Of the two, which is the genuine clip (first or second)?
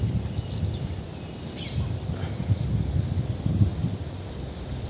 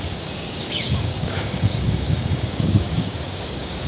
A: first